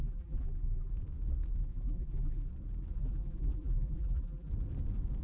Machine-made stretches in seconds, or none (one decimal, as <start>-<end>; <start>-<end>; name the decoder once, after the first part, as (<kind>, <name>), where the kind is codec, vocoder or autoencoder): 0.0-0.9 (vocoder, BigVGAN v2); 1.6-2.5; 2.9-4.5